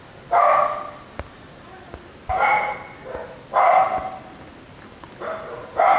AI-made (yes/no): no